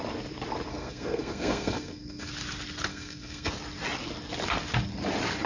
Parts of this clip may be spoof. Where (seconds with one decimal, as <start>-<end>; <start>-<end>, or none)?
0.7-2.3; 2.9-3.5